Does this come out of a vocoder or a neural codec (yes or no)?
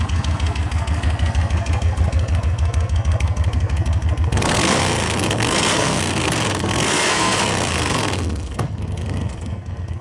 yes